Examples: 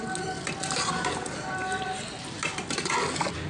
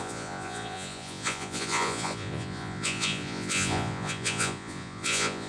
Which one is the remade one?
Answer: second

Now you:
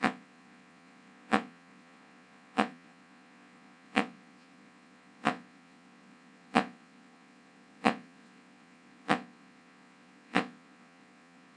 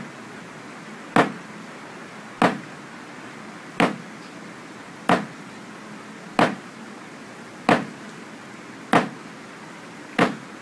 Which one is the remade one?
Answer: first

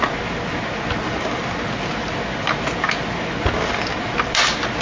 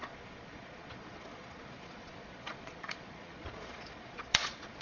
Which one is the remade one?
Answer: second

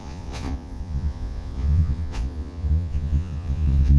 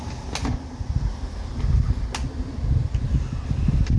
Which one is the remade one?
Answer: first